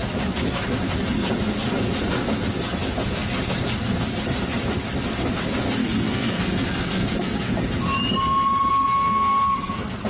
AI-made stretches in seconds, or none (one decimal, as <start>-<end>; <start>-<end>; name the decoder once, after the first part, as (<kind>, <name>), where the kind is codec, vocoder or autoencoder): 5.8-7.5 (codec, SNAC); 8.7-10.1